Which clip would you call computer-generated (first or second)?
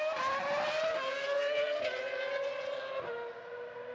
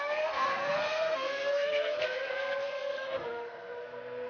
second